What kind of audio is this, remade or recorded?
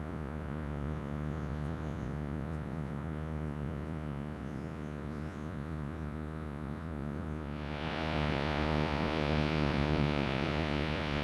remade